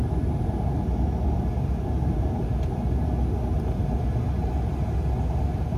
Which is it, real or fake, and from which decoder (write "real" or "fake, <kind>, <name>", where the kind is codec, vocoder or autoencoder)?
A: real